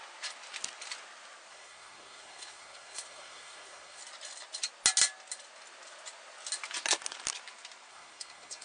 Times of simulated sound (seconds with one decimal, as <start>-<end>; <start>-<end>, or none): 1.5-4.0; 7.9-8.6